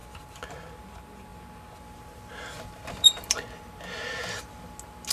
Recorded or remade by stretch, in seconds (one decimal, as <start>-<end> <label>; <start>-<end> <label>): 0.0-5.1 recorded